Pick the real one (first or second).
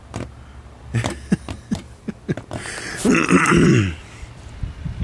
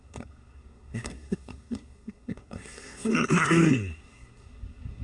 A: first